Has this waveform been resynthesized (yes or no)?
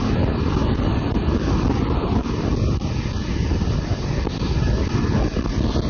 no